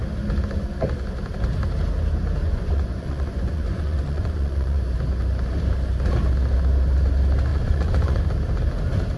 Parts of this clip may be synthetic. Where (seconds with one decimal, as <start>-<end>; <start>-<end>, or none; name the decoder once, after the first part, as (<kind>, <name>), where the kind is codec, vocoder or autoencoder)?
2.4-4.8 (vocoder, Vocos); 7.5-8.2